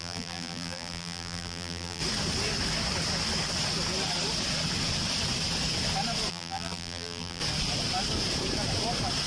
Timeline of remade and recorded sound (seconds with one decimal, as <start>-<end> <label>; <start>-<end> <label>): 0.0-2.0 remade; 2.0-6.3 recorded; 6.3-7.4 remade; 7.4-9.3 recorded